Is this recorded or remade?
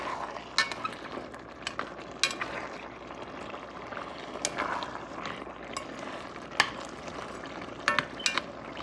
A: recorded